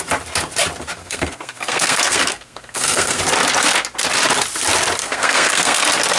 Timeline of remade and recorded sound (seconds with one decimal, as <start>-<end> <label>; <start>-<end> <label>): 0.0-1.0 recorded; 1.0-3.2 remade; 3.2-5.0 recorded; 5.0-5.8 remade; 5.8-6.2 recorded